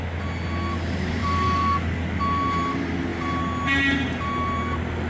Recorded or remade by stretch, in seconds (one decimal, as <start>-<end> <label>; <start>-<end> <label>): 0.0-1.2 recorded; 1.2-2.2 remade; 2.2-5.1 recorded